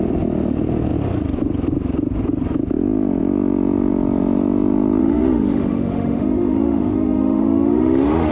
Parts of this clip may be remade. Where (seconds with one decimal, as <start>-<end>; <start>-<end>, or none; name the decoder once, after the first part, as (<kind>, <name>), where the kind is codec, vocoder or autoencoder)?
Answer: 5.0-8.3 (autoencoder, DAC-VAE)